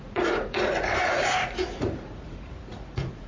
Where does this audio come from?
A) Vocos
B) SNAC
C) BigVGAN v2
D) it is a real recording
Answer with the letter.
A